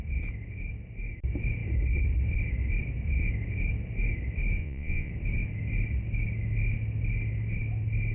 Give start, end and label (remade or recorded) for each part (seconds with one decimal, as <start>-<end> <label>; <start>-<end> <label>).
0.0-4.6 recorded; 4.6-5.1 remade; 5.1-8.1 recorded